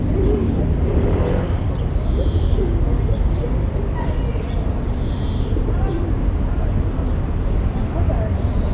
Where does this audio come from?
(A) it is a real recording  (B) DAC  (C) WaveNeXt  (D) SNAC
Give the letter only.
A